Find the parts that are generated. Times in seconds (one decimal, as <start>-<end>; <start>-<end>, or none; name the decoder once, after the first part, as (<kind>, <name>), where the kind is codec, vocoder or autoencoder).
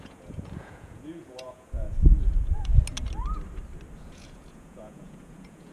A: 0.0-2.7 (vocoder, Vocos); 4.0-5.7